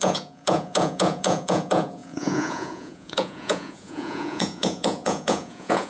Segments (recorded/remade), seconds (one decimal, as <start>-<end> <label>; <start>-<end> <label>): 0.0-5.9 remade